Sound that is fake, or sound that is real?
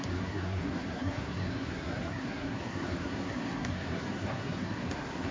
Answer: fake